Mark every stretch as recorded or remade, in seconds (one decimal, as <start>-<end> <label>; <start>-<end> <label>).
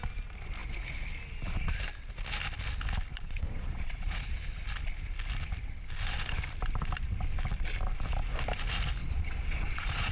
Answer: 0.0-3.1 recorded; 3.1-4.4 remade; 4.4-9.0 recorded; 9.0-10.1 remade